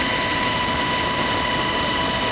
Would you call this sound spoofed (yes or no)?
no